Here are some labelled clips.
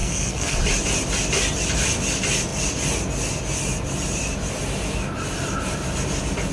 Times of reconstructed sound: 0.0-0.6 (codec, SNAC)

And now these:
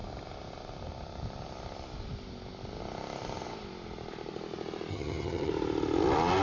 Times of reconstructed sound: 4.9-5.5 (vocoder, HiFi-GAN)

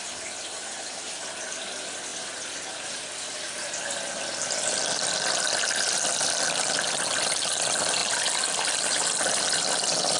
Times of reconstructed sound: 0.6-1.3 (vocoder, BigVGAN v2)

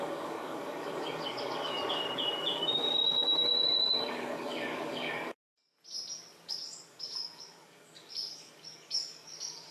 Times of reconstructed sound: 0.0-3.5 (codec, DAC); 4.1-5.4; 6.5-9.7

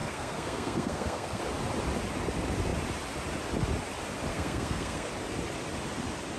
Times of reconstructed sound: 0.0-1.4 (codec, SNAC); 4.3-5.1

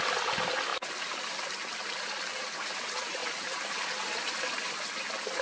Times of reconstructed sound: none

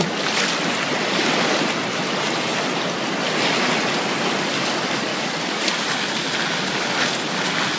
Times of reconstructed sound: 5.1-5.7 (vocoder, Vocos)